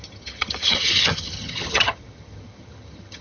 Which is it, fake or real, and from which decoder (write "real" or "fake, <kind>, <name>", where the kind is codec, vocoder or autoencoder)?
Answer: fake, vocoder, HiFi-GAN